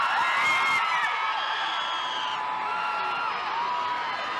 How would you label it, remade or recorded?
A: recorded